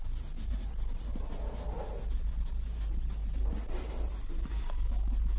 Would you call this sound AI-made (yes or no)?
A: no